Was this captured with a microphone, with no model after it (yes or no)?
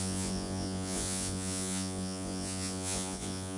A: no